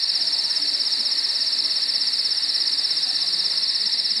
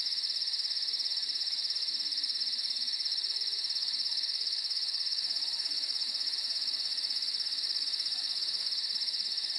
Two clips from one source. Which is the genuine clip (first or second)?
first